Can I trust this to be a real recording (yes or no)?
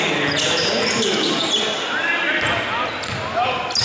yes